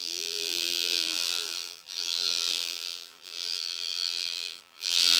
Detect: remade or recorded remade